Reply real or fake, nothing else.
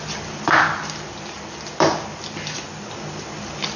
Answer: real